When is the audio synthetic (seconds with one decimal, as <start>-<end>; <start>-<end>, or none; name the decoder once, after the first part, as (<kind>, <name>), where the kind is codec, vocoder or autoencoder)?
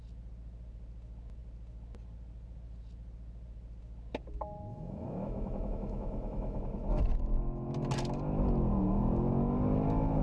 4.7-6.6 (autoencoder, DAC-VAE)